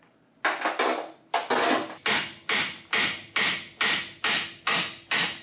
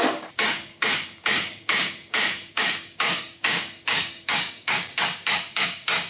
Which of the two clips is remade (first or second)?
second